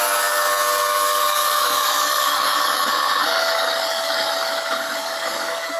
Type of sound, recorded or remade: remade